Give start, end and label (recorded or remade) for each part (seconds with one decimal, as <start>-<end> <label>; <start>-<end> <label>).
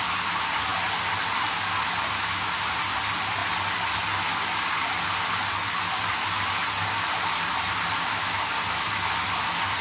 0.0-9.8 recorded